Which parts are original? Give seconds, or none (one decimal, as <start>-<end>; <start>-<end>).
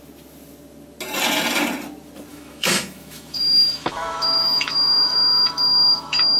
0.0-2.3